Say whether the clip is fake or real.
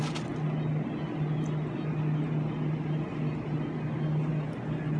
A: real